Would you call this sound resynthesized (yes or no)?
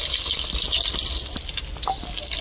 no